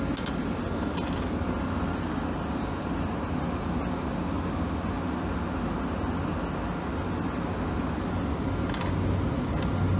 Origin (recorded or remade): recorded